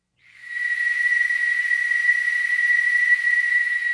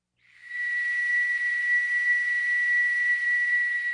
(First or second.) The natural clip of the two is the second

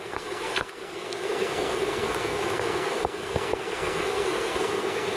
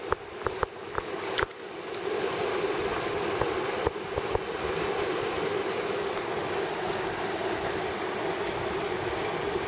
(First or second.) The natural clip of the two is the second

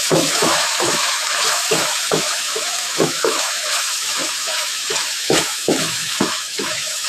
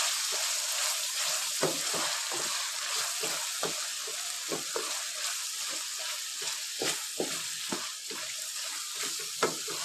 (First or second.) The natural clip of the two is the second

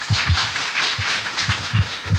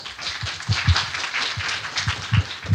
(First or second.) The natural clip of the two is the second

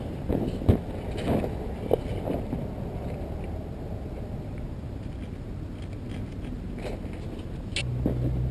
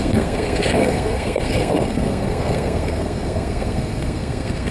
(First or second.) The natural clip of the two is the first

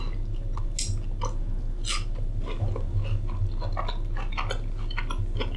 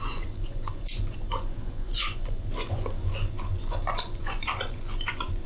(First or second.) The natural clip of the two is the first